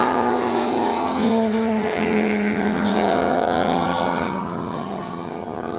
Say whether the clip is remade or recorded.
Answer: remade